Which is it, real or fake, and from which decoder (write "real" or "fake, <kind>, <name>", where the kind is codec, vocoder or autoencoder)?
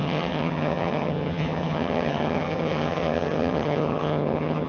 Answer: fake, vocoder, HiFi-GAN